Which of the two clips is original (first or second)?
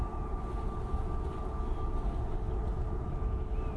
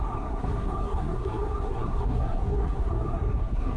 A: first